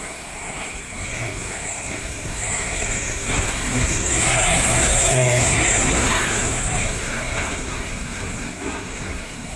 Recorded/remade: remade